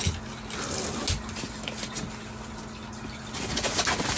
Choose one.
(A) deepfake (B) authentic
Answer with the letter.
B